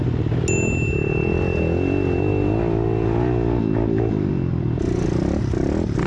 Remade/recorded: recorded